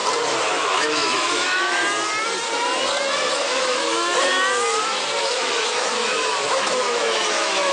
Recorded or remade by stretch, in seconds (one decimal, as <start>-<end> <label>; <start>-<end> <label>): 0.0-0.5 recorded; 0.5-1.8 remade; 1.8-3.3 recorded; 3.3-4.3 remade; 4.3-5.2 recorded; 5.2-7.7 remade